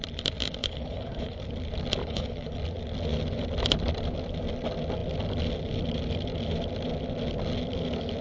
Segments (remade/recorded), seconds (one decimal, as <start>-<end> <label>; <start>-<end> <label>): 0.0-0.6 recorded; 0.6-1.4 remade; 1.4-2.0 recorded; 2.0-2.6 remade; 2.6-8.2 recorded